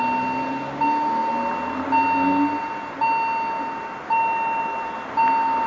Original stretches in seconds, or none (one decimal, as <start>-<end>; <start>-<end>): 0.0-5.7